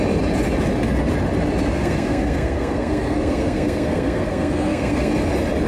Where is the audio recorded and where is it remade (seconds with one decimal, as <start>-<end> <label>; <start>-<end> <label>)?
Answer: 0.0-1.7 recorded; 1.7-5.1 remade; 5.1-5.7 recorded

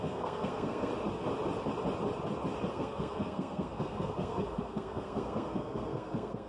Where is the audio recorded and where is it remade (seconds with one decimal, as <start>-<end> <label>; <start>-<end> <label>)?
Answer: 0.0-0.9 remade; 0.9-2.7 recorded; 2.7-6.5 remade

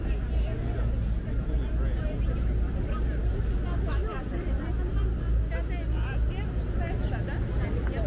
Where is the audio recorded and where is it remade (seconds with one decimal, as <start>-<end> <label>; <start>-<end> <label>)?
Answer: 0.0-8.1 recorded

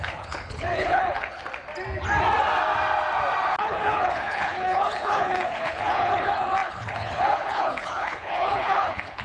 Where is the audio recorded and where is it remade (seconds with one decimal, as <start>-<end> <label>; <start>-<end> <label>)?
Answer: 0.0-1.4 remade; 1.4-3.5 recorded; 3.5-9.2 remade

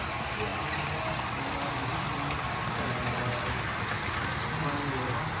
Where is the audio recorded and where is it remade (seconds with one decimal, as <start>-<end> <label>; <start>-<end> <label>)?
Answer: 0.0-5.4 recorded